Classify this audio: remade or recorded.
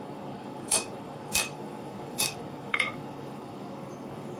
remade